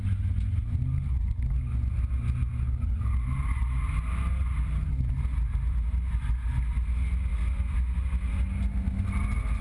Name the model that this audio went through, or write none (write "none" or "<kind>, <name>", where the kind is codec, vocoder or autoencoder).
none